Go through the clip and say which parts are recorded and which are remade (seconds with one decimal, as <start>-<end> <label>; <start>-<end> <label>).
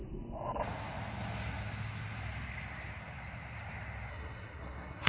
0.0-4.1 recorded; 4.1-5.1 remade